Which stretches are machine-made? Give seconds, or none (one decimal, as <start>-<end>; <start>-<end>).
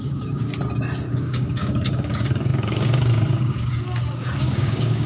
0.0-0.5; 1.1-5.1